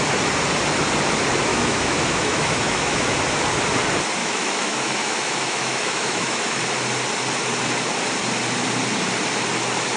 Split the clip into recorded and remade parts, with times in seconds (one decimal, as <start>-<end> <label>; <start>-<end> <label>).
0.0-1.5 recorded; 1.5-3.2 remade; 3.2-4.2 recorded; 4.2-6.6 remade; 6.6-10.0 recorded